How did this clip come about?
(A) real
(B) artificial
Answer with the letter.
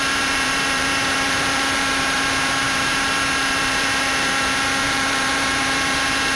B